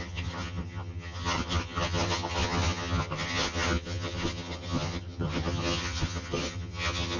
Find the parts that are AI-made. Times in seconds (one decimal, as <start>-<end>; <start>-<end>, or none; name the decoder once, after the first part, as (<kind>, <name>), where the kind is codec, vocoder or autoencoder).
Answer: 0.0-7.2 (vocoder, HiFi-GAN)